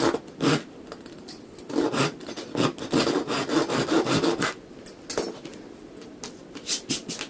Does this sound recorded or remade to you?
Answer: recorded